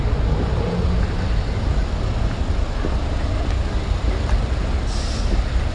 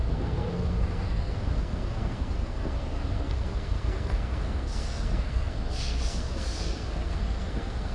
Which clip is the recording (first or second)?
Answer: first